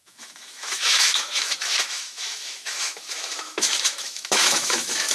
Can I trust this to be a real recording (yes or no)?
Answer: no